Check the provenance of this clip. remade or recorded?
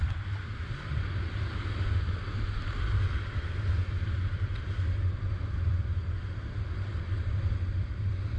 recorded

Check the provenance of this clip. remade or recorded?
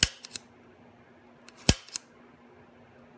recorded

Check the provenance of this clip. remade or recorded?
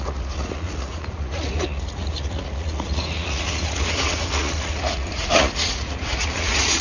remade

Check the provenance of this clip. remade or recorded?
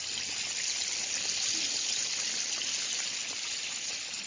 recorded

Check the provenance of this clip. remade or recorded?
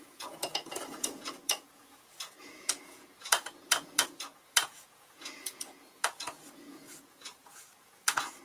remade